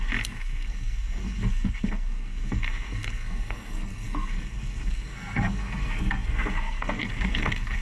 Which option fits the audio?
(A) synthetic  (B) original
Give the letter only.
A